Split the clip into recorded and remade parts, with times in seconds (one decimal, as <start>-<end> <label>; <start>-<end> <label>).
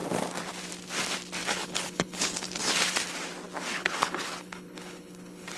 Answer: 0.0-1.4 recorded; 1.4-2.8 remade; 2.8-3.7 recorded; 3.7-5.6 remade